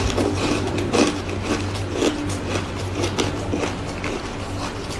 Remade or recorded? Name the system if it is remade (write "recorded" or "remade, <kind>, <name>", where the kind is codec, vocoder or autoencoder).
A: recorded